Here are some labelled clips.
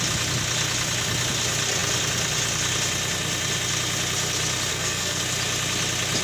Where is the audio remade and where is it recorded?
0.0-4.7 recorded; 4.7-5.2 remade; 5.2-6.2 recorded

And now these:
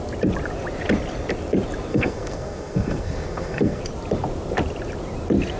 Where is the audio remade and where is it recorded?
0.0-1.9 recorded; 1.9-3.8 remade; 3.8-5.6 recorded

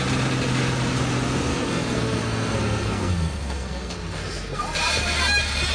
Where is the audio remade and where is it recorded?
0.0-1.5 recorded; 1.5-4.6 remade; 4.6-5.7 recorded

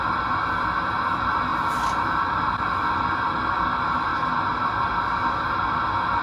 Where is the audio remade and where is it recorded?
0.0-6.2 recorded

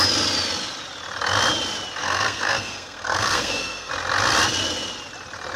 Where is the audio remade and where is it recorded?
0.0-2.0 recorded; 2.0-3.9 remade; 3.9-5.6 recorded

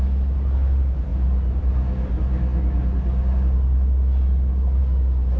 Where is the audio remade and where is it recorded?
0.0-5.4 recorded